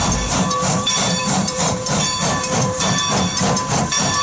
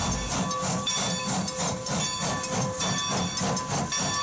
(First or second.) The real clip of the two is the second